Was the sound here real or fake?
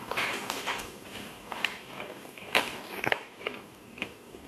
fake